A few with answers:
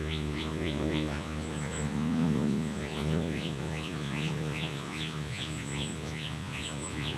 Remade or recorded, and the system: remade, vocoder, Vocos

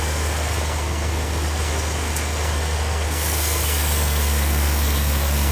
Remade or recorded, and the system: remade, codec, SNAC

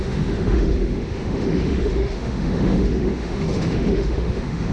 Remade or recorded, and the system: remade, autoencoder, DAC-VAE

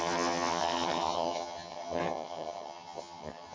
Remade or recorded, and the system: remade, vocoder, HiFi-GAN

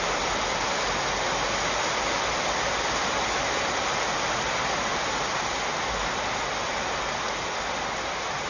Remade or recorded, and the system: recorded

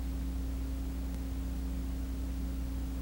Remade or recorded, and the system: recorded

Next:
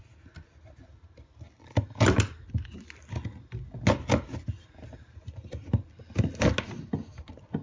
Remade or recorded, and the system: recorded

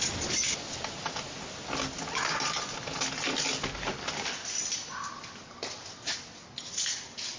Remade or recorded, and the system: recorded